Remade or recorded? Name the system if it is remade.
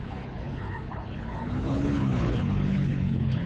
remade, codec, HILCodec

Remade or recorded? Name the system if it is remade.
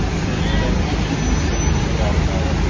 recorded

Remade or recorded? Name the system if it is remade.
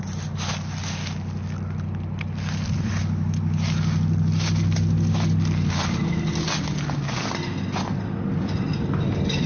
recorded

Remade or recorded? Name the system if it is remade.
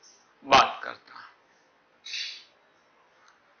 recorded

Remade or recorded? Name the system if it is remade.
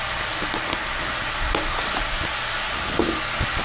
recorded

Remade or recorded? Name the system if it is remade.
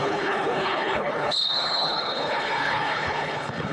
remade, codec, HILCodec